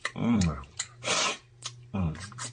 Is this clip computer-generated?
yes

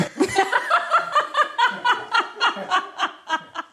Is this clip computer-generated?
no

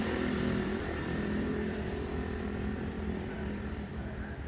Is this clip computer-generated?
yes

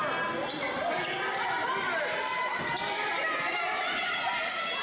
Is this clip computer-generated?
no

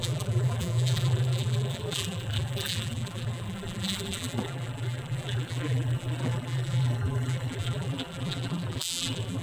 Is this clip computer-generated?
yes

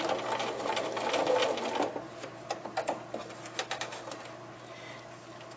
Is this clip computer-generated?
no